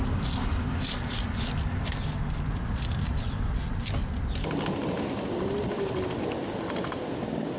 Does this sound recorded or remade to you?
recorded